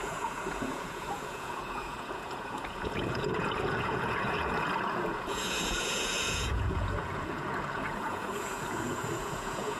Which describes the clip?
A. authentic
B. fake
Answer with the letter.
B